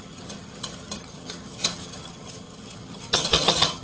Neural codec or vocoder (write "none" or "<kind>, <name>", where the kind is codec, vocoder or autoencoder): vocoder, HiFi-GAN